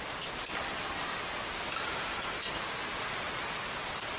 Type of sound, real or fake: real